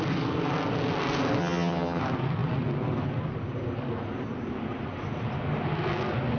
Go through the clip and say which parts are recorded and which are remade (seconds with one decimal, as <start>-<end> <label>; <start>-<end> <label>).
0.0-1.4 recorded; 1.4-2.0 remade; 2.0-6.4 recorded